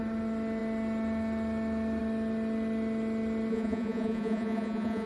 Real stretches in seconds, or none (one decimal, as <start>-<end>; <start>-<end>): 0.0-3.5